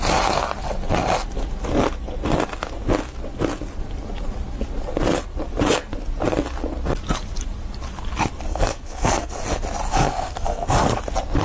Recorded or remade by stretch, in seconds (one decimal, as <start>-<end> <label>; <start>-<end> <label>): 0.0-8.5 recorded; 8.5-9.4 remade; 9.4-9.9 recorded; 9.9-11.0 remade; 11.0-11.4 recorded

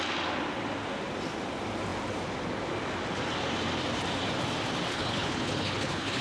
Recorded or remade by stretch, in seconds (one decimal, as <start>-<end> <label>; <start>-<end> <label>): 0.0-4.9 recorded; 4.9-6.2 remade

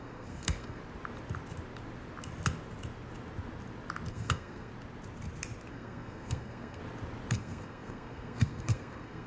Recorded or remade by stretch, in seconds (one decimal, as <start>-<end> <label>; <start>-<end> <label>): 0.0-0.8 remade; 0.8-4.1 recorded; 4.1-4.7 remade; 4.7-5.7 recorded; 5.7-6.8 remade; 6.8-7.3 recorded; 7.3-9.3 remade

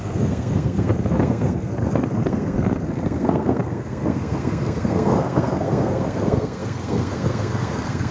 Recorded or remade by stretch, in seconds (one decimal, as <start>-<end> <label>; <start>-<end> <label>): 0.0-8.1 remade

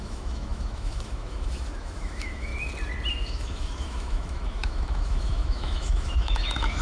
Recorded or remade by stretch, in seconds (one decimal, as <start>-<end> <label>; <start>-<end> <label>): 0.0-2.5 remade; 2.5-3.1 recorded; 3.1-6.8 remade

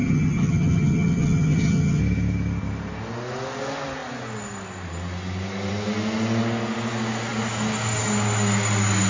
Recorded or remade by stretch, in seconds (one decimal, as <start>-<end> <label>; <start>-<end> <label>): 0.0-2.0 remade; 2.0-9.1 recorded

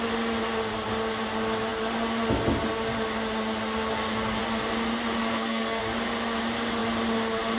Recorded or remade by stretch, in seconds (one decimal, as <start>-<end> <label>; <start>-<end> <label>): 0.0-5.3 recorded; 5.3-5.8 remade; 5.8-7.6 recorded